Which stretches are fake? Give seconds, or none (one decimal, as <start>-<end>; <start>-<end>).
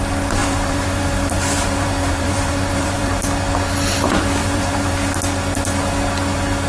0.4-3.2; 4.4-4.9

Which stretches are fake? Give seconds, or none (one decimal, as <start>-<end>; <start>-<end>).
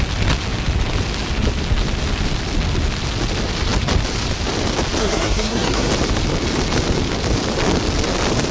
5.0-5.9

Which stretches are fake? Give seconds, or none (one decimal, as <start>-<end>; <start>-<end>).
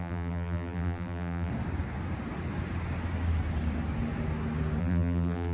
0.0-1.5; 4.8-5.5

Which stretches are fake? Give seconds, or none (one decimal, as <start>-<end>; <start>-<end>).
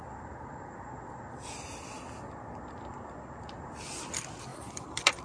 4.5-5.2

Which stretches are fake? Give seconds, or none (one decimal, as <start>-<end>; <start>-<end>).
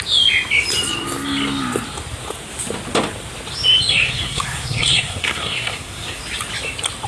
3.9-6.2